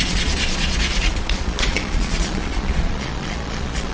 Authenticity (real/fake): fake